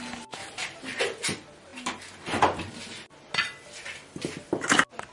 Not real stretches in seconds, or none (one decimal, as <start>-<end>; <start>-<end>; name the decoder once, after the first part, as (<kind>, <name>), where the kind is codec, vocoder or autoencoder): 0.4-1.0 (vocoder, BigVGAN v2)